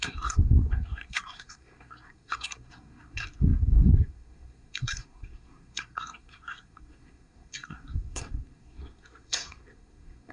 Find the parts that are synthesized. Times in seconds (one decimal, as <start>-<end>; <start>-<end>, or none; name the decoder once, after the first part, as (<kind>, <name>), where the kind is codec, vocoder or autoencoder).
0.0-10.3 (codec, SNAC)